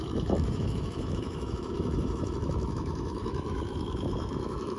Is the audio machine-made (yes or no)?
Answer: yes